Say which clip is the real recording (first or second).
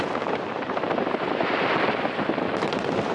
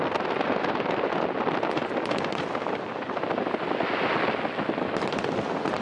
second